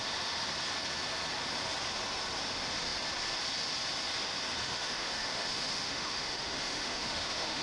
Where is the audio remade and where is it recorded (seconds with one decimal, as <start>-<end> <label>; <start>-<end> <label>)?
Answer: 0.0-4.6 recorded; 4.6-7.6 remade